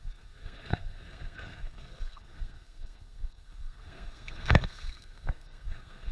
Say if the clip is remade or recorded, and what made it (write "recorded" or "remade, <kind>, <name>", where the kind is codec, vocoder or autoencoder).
remade, codec, SNAC